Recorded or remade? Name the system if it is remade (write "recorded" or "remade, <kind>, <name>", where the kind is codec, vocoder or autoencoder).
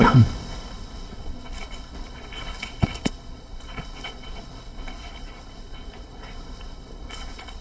remade, codec, HILCodec